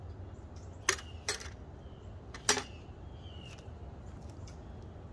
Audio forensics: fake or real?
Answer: real